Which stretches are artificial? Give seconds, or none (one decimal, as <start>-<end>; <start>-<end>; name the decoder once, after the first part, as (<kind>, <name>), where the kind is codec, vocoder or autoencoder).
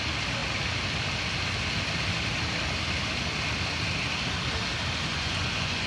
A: 5.1-5.9 (vocoder, Vocos)